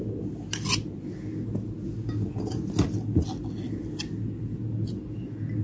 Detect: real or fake real